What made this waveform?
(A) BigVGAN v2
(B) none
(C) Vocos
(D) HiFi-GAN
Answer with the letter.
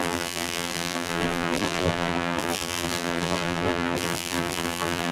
A